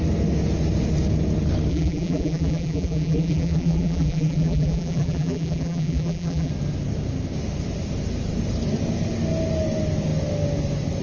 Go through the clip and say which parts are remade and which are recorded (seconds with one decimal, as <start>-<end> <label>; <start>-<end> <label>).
0.0-1.7 recorded; 1.7-6.5 remade; 6.5-11.0 recorded